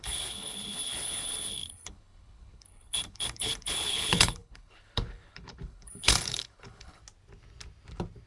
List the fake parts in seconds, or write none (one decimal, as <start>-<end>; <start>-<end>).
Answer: 0.0-7.0